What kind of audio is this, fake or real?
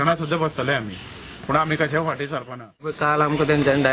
fake